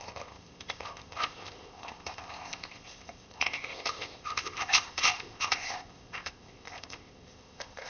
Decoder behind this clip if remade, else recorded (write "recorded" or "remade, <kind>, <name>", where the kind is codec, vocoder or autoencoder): remade, codec, ZipCodec